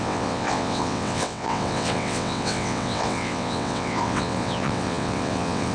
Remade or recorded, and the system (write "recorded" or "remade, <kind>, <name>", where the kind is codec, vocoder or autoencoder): remade, vocoder, WaveNeXt